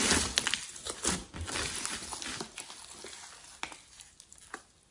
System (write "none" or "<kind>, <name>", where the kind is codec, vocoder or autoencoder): none